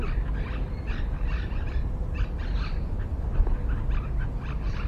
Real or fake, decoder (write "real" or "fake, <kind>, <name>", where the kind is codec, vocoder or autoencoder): real